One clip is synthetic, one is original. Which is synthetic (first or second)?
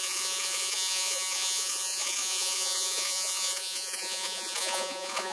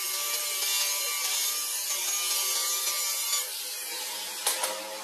first